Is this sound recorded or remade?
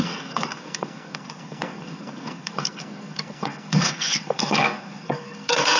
remade